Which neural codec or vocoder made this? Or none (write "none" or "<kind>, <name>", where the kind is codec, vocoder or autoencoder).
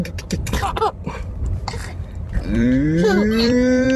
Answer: vocoder, BigVGAN v2